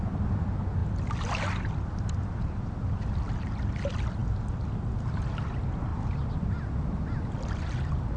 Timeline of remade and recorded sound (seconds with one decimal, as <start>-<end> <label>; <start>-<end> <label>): 0.0-8.2 recorded